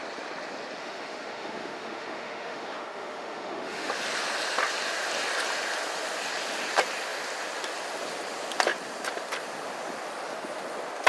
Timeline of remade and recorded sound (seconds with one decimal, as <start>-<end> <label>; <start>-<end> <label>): 0.0-0.8 recorded; 0.8-3.9 remade; 3.9-11.1 recorded